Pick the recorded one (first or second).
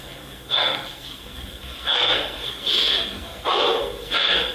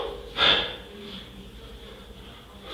second